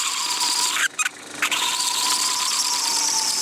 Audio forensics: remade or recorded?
recorded